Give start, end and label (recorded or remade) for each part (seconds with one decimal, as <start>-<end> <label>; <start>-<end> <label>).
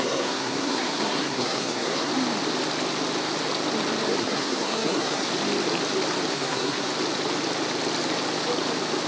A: 0.0-2.1 remade; 2.1-4.2 recorded; 4.2-5.3 remade; 5.3-6.3 recorded; 6.3-6.9 remade; 6.9-9.1 recorded